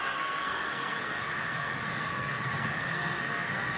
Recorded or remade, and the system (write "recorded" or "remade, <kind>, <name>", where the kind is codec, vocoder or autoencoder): remade, codec, SNAC